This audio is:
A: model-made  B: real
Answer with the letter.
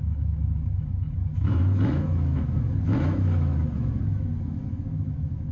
A